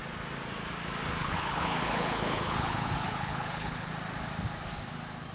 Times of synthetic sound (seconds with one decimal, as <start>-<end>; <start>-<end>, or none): 1.2-3.9